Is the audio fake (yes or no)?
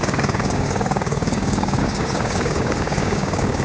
yes